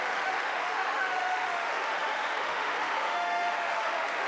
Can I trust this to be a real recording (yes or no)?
no